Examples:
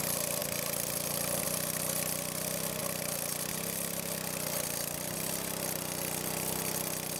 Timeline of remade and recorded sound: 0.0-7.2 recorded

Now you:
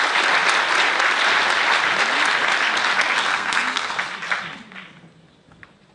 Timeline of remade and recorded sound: 0.0-3.3 recorded; 3.3-3.9 remade; 3.9-5.9 recorded

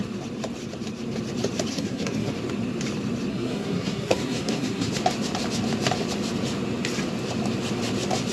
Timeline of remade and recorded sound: 0.0-1.7 recorded; 1.7-2.3 remade; 2.3-3.3 recorded; 3.3-4.9 remade; 4.9-8.3 recorded

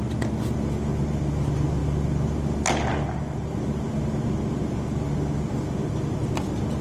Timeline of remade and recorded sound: 0.0-6.8 recorded

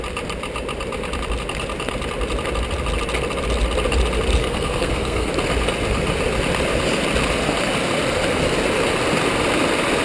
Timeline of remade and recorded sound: 0.0-4.4 recorded; 4.4-5.3 remade; 5.3-10.0 recorded